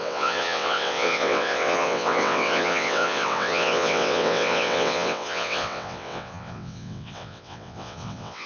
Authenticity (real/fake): fake